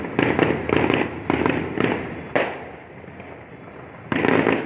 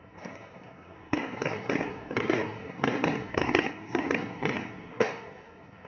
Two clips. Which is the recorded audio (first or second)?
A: first